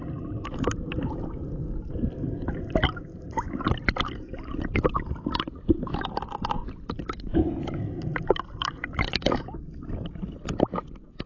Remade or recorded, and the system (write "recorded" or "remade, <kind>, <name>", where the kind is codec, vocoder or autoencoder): recorded